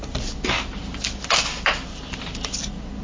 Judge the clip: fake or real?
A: real